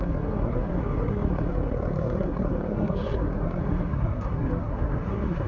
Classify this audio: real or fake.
fake